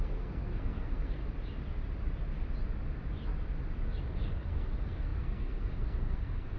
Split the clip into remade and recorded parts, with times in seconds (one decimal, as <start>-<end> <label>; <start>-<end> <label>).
0.0-1.2 remade; 1.2-4.0 recorded; 4.0-6.6 remade